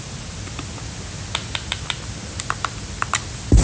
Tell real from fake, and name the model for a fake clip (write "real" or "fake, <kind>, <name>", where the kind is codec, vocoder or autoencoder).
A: real